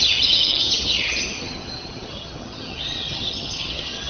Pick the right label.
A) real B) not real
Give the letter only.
B